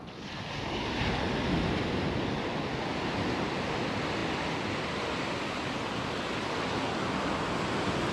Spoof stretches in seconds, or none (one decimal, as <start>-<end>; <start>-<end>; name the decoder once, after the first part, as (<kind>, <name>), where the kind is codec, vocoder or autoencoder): none